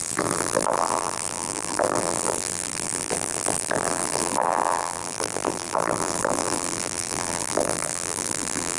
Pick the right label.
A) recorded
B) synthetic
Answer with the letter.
B